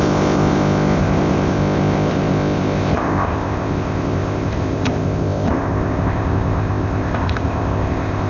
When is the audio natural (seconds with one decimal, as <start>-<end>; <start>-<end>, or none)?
none